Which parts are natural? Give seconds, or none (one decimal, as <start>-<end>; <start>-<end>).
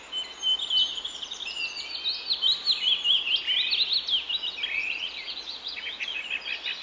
0.0-4.8; 6.3-6.8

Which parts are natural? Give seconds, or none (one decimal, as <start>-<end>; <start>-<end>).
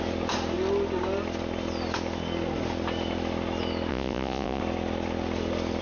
0.0-3.9; 4.6-5.8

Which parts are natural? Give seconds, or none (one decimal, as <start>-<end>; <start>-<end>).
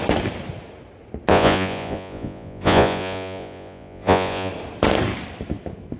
0.0-1.3; 4.5-6.0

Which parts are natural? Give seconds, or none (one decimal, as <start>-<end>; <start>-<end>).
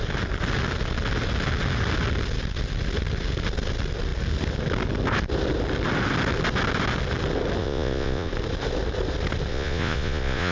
0.0-7.6; 8.3-9.5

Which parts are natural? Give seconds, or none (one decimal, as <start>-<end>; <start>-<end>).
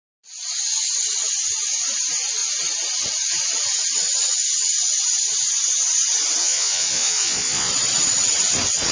0.0-6.4; 7.7-8.9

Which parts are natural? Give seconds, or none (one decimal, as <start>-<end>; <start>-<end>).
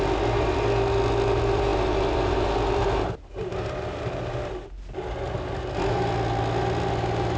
0.0-7.4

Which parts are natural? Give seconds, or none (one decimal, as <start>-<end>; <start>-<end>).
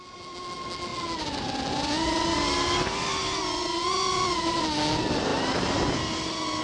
0.0-6.6